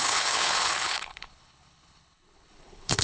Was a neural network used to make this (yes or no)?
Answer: yes